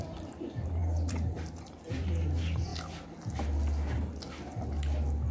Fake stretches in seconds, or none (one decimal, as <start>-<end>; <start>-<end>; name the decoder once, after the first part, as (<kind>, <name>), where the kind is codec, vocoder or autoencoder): 0.8-1.9 (vocoder, BigVGAN v2)